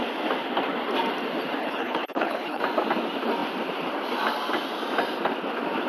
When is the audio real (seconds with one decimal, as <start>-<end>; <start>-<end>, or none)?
0.0-1.6; 2.6-5.9